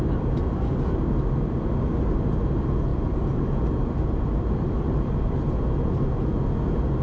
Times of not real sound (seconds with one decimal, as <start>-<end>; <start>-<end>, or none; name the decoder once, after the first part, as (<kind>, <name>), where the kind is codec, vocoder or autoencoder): 2.9-5.7 (vocoder, BigVGAN v2)